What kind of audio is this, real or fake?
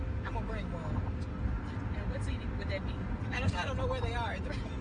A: real